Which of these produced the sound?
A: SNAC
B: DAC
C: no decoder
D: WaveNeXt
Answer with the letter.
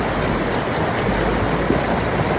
C